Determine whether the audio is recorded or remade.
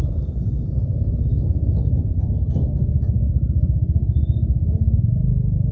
recorded